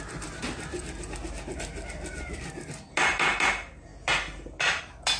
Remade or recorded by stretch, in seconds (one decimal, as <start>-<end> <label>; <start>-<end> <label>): 0.0-5.2 recorded